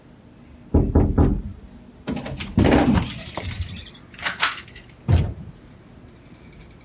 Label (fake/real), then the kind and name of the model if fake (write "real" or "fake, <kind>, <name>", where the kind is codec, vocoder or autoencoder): real